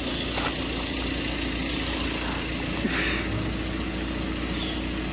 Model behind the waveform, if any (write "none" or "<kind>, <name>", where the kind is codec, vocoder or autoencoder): none